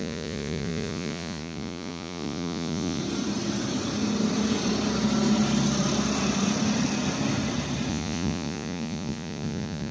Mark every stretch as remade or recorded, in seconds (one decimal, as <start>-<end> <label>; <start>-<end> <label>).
0.0-3.0 remade; 3.0-7.9 recorded; 7.9-9.9 remade